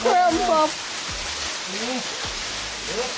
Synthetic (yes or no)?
no